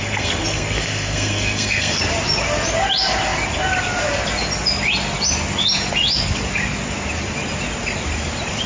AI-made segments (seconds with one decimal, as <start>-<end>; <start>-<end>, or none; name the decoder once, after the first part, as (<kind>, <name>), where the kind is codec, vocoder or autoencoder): 0.0-2.0 (codec, SNAC)